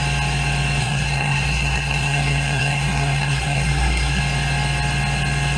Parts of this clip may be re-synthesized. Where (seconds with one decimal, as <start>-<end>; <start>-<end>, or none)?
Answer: 0.8-4.2